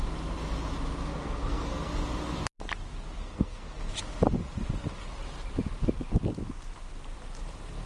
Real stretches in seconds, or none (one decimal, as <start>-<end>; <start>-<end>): 0.0-1.1; 1.9-3.2; 3.9-7.9